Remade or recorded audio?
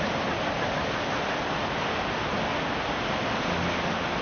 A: recorded